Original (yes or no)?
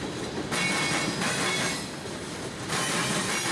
yes